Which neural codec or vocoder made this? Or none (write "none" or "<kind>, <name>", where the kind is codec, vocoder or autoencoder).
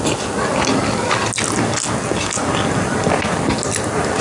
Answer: none